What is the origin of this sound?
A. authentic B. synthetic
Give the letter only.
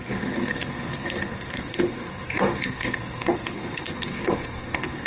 B